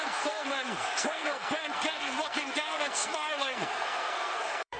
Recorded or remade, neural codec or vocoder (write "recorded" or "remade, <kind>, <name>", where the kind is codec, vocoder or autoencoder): remade, codec, SNAC